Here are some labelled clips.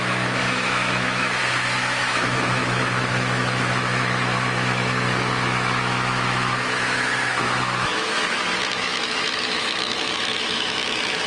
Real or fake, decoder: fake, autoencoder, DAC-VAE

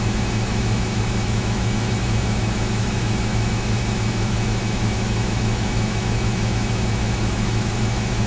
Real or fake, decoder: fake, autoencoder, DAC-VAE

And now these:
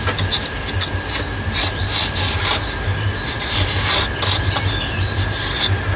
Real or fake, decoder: real